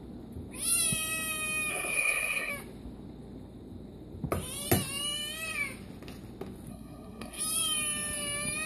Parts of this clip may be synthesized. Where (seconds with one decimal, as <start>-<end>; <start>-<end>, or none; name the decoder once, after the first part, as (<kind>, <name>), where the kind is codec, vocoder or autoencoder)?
1.7-2.5 (codec, SNAC); 6.7-7.4